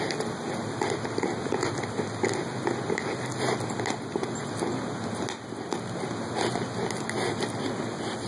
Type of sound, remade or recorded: recorded